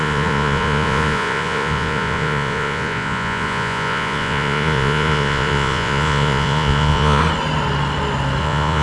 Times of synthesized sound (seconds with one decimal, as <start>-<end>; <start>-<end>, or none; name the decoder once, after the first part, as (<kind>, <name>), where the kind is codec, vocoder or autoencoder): 0.0-7.2 (vocoder, Vocos); 8.4-8.8